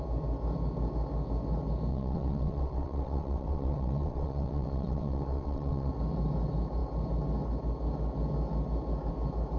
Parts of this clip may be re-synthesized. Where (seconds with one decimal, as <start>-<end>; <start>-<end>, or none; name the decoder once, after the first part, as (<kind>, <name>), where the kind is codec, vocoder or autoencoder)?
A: 1.9-5.9 (vocoder, WaveNeXt)

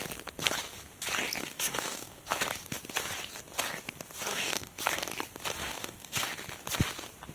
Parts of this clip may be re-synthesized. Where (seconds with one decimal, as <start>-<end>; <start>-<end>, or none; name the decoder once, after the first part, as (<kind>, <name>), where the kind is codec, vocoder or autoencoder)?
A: 1.4-2.2 (codec, DAC); 4.3-4.8; 5.6-6.3

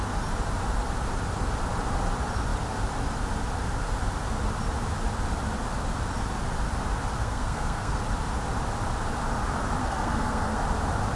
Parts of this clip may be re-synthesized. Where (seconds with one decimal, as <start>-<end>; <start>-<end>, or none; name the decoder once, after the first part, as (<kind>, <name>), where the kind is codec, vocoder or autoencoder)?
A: 7.2-8.0 (codec, SNAC); 9.8-10.6

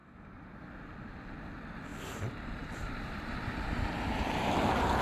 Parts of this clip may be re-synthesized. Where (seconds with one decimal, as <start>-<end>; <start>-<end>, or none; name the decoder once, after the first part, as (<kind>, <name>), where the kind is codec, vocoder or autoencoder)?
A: 0.0-0.7 (vocoder, BigVGAN v2); 1.9-4.5

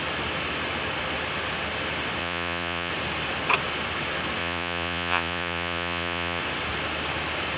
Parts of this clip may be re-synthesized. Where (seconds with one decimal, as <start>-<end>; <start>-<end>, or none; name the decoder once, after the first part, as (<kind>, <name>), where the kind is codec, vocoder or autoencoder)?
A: 2.2-2.9 (vocoder, Vocos); 4.4-6.4

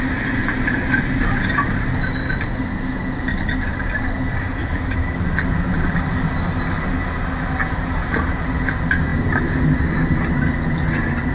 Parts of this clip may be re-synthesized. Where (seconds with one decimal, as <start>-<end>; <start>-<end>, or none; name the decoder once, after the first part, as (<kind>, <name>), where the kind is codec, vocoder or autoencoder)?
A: 4.6-5.2 (autoencoder, DAC-VAE)

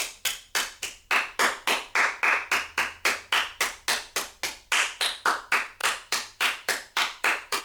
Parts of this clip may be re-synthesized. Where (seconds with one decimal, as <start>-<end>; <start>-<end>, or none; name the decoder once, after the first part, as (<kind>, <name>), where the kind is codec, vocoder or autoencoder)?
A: 5.8-7.6 (vocoder, BigVGAN v2)